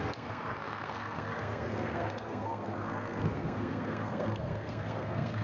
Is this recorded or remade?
remade